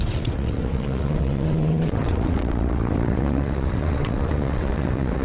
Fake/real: fake